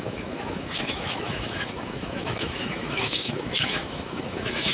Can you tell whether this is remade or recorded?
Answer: remade